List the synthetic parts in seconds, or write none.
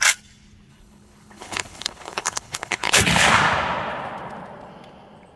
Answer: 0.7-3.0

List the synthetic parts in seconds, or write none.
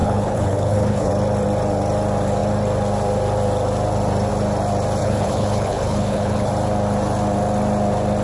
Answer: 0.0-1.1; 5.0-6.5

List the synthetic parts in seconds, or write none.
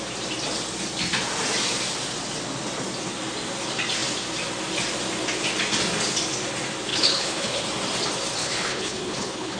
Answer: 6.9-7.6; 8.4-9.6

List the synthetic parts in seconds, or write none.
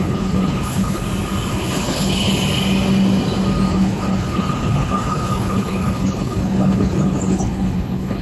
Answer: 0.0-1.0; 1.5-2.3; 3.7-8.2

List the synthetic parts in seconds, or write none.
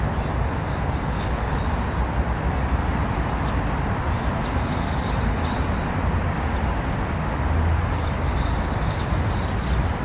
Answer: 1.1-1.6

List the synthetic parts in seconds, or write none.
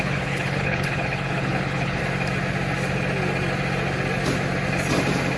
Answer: 0.0-2.0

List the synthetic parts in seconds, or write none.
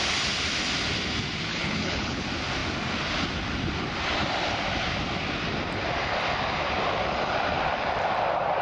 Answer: 1.5-2.2